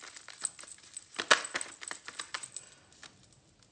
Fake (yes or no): no